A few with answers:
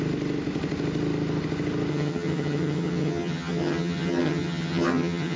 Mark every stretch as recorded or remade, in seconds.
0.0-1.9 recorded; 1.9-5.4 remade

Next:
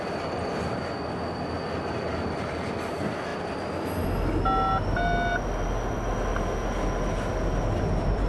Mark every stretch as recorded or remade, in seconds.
0.0-8.3 recorded

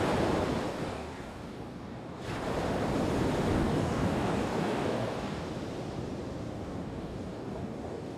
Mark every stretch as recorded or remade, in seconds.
0.0-0.7 recorded; 0.7-2.2 remade; 2.2-3.5 recorded; 3.5-5.4 remade; 5.4-6.5 recorded; 6.5-8.2 remade